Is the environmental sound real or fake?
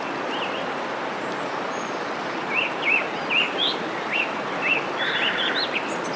real